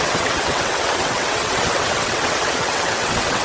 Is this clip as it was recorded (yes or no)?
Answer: no